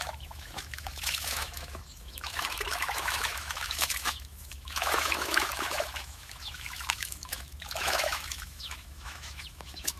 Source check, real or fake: fake